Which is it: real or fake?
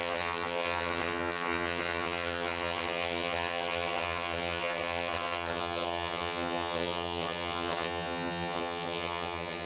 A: fake